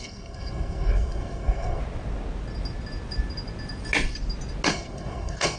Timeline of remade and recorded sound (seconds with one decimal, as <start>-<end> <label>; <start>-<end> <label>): 0.0-1.8 remade; 1.8-4.7 recorded; 4.7-5.6 remade